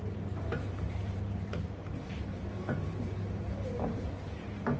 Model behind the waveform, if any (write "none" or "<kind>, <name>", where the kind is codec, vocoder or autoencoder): vocoder, BigVGAN v2